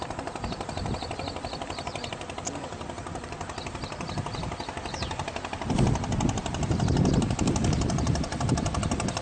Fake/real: fake